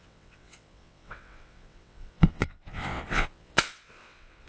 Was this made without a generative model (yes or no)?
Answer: no